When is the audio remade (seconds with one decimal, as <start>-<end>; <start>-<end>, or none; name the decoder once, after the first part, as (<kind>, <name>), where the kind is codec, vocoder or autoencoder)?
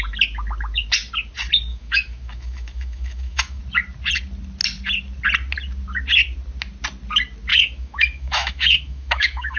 1.7-3.6 (autoencoder, DAC-VAE); 7.5-9.6